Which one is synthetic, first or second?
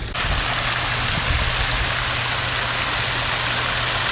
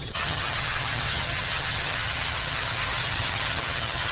second